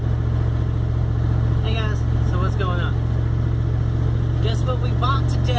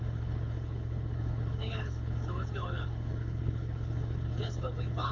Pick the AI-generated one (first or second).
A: second